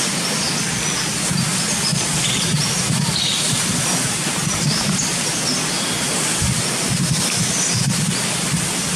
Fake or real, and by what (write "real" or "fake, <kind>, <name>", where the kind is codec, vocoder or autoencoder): real